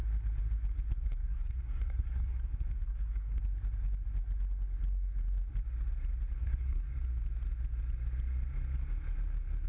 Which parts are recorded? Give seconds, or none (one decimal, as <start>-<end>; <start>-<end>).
0.0-0.9; 3.4-6.4; 6.9-9.7